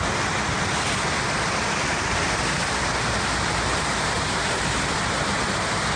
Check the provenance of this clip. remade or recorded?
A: recorded